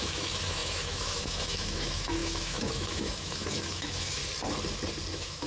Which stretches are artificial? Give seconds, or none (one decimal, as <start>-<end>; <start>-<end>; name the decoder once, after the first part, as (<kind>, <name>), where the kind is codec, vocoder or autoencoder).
0.0-4.2 (autoencoder, DAC-VAE); 5.1-5.5